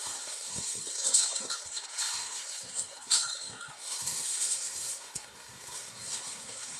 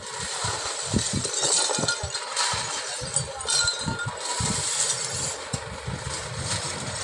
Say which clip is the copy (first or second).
first